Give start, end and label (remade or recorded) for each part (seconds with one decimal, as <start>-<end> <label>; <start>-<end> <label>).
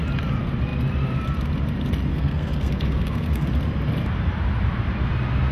0.0-2.1 recorded; 2.1-3.5 remade; 3.5-5.5 recorded